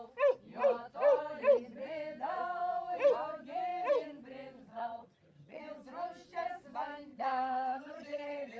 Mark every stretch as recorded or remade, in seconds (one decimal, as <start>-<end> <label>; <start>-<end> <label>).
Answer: 0.0-4.7 recorded; 4.7-5.6 remade; 5.6-7.1 recorded; 7.1-8.6 remade